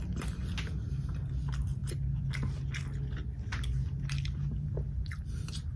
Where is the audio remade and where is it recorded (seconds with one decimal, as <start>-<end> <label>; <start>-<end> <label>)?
0.0-5.8 recorded